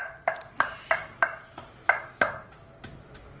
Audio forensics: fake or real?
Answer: real